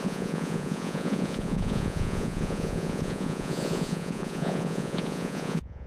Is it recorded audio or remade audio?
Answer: remade